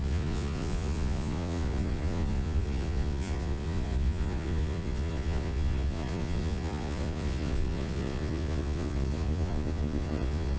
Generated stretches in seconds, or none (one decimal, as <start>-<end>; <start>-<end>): 0.0-10.6